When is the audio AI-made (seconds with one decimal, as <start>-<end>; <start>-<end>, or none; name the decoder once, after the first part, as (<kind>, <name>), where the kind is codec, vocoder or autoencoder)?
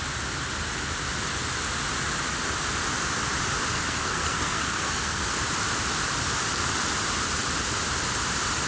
3.7-5.3 (codec, SNAC)